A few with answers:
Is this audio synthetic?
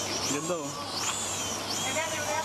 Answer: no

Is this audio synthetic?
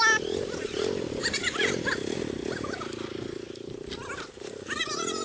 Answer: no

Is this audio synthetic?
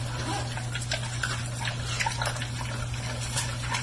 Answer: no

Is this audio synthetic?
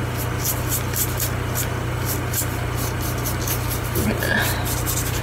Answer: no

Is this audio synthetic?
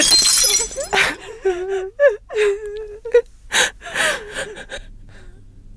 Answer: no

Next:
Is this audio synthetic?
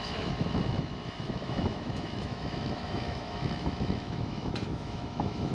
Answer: yes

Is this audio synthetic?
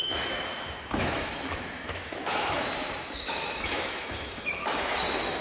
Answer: yes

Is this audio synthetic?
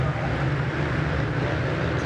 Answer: no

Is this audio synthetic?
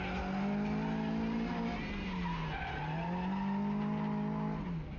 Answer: no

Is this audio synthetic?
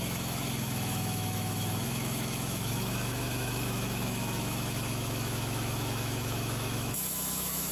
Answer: yes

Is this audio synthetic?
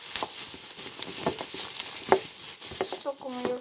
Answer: no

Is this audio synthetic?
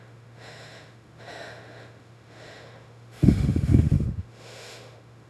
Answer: yes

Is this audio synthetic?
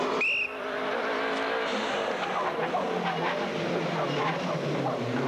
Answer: no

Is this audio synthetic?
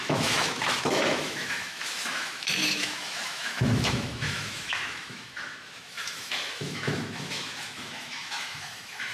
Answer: yes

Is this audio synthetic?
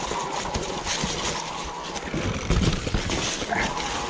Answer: no